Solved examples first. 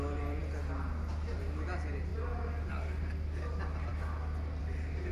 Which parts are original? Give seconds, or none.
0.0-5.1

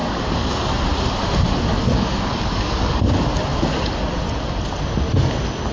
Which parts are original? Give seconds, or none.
0.5-1.7; 3.1-5.7

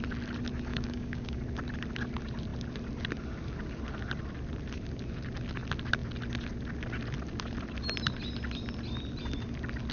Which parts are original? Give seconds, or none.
0.0-0.7; 1.4-9.9

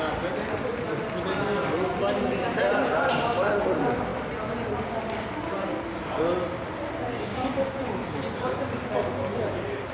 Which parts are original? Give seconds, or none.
0.0-7.3; 7.9-9.9

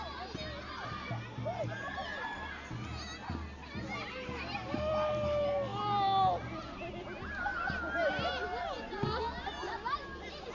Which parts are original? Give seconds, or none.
0.0-10.5

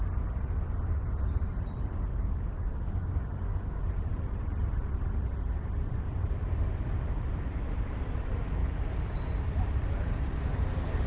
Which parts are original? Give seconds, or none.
0.0-2.1; 3.8-11.1